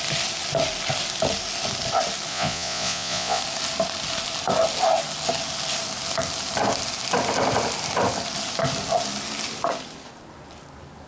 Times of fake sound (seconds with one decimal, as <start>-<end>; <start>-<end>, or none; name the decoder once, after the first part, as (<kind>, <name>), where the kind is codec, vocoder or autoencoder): 2.3-3.4 (vocoder, Vocos)